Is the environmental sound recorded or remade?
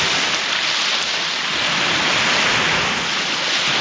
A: recorded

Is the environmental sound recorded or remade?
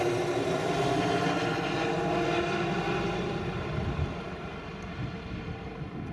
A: recorded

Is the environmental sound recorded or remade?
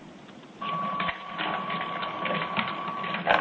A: recorded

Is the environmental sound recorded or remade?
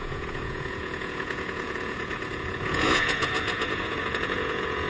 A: remade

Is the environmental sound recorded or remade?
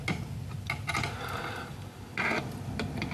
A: recorded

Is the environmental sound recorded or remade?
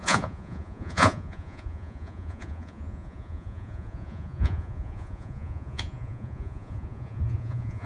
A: remade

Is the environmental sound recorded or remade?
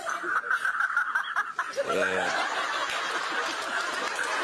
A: recorded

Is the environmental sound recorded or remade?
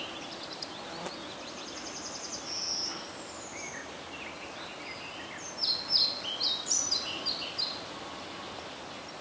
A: recorded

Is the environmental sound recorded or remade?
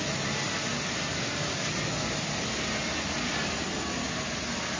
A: recorded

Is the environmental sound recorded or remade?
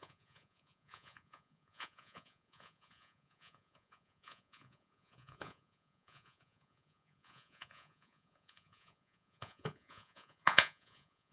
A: remade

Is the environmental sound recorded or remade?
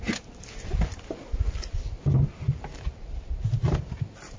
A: recorded